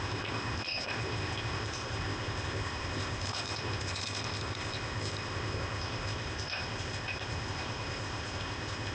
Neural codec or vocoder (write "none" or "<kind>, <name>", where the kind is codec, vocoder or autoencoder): codec, ZipCodec